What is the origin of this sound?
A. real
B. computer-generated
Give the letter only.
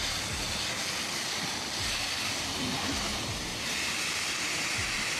A